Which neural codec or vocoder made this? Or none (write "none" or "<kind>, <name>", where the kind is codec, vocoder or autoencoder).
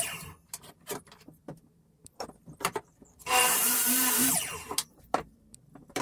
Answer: vocoder, BigVGAN v2